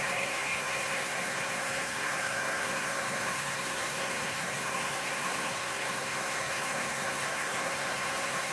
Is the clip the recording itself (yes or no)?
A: no